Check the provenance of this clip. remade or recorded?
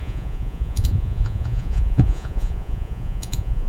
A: remade